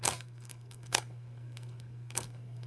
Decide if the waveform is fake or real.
fake